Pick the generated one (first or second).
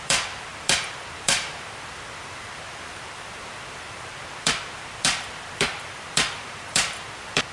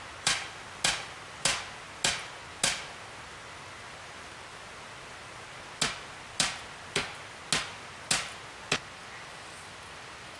first